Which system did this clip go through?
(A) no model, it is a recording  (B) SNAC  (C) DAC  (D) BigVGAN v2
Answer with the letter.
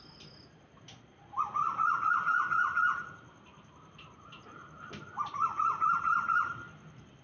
A